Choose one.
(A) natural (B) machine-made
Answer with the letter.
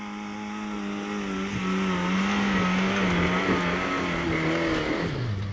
A